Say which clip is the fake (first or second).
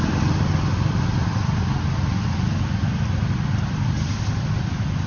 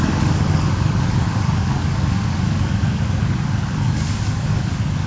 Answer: second